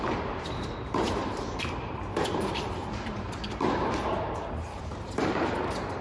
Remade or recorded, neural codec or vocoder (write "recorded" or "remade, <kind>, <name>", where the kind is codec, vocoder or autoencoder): remade, vocoder, BigVGAN v2